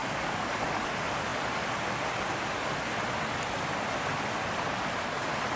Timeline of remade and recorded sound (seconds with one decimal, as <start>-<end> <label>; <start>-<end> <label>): 0.0-0.5 remade; 0.5-5.6 recorded